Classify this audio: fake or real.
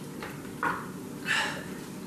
real